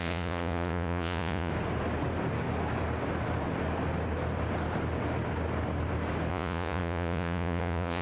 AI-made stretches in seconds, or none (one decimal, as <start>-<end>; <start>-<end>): 0.0-1.5; 6.3-8.0